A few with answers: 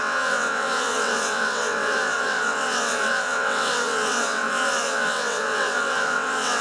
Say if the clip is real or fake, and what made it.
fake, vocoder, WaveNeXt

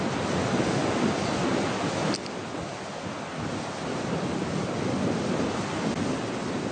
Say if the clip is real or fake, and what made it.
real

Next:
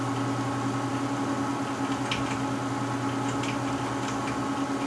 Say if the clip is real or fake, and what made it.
real